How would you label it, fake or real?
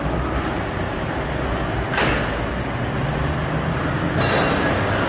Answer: real